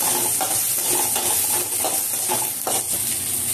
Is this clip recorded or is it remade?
recorded